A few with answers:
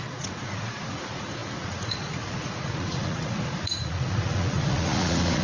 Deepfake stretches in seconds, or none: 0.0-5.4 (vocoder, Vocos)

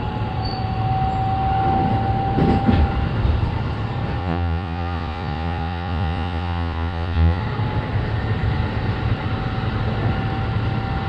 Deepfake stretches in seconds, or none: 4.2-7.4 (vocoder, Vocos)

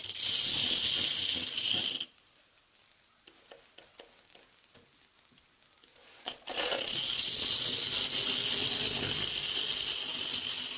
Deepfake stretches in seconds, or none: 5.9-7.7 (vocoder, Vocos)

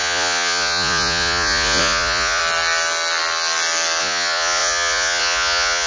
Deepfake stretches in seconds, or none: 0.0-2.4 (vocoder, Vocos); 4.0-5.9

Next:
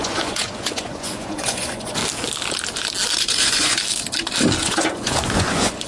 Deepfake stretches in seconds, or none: 0.0-2.0 (vocoder, Vocos); 3.2-3.8; 4.6-5.9